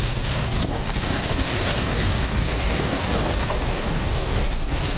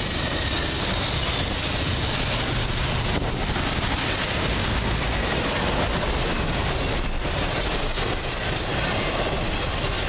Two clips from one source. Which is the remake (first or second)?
first